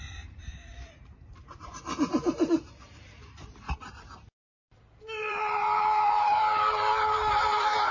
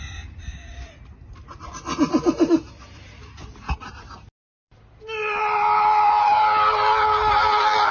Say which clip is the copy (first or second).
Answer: first